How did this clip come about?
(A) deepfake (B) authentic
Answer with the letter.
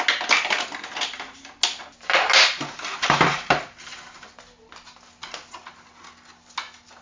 B